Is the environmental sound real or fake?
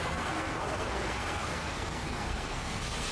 fake